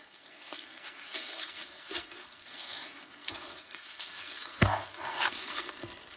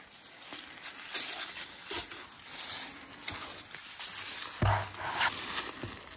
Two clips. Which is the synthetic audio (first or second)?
first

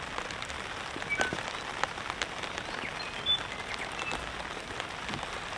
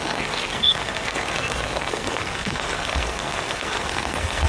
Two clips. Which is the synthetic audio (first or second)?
second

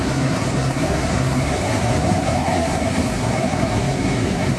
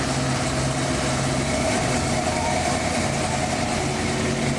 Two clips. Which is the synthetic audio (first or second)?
first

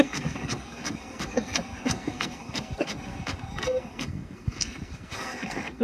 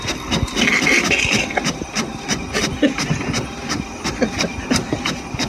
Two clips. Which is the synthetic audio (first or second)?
first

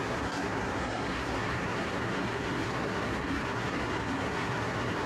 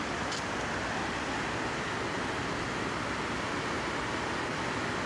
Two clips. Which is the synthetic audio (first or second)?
first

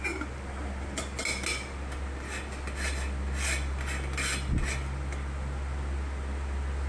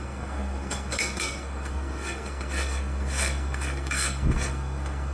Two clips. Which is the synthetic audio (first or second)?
second